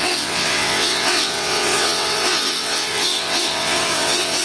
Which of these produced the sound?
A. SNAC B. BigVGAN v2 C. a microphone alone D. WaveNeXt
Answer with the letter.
D